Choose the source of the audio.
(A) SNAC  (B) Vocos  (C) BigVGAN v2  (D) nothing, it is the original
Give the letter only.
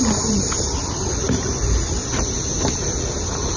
D